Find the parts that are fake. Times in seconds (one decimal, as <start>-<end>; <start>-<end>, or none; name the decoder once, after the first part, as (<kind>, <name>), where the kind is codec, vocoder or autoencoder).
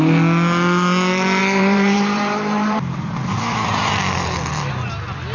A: 1.4-3.9 (vocoder, BigVGAN v2)